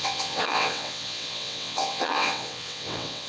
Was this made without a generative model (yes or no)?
no